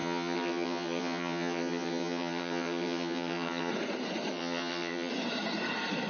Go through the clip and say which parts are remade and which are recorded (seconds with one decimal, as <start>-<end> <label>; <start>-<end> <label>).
0.0-3.7 remade; 3.7-4.3 recorded; 4.3-5.1 remade; 5.1-6.1 recorded